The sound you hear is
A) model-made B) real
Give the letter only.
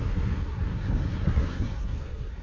A